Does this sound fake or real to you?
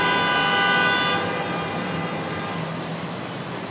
real